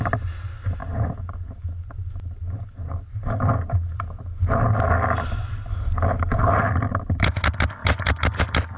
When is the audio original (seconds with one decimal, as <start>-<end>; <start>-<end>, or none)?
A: 0.0-8.8